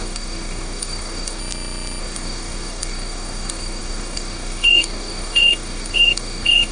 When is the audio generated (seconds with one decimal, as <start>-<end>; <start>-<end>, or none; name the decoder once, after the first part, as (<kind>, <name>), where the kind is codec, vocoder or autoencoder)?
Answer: 0.0-1.4 (codec, DAC); 2.0-6.7